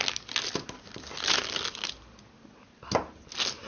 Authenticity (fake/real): real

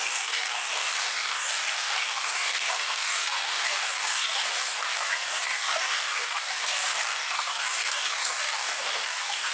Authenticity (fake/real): fake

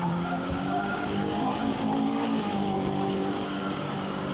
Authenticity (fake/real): fake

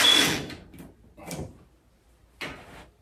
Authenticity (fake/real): real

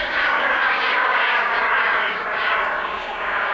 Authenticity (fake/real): fake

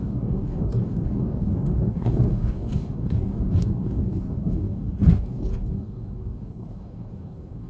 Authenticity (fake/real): fake